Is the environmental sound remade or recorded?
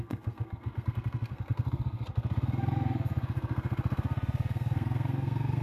remade